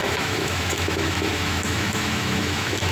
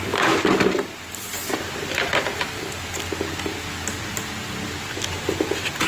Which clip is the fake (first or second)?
first